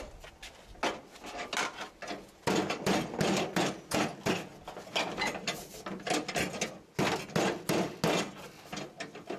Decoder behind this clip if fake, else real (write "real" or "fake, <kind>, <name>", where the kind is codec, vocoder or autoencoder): real